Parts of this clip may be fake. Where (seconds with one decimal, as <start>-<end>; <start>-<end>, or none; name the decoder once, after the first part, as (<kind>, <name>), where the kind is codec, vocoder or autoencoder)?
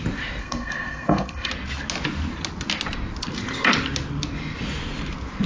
0.4-1.5 (codec, SNAC)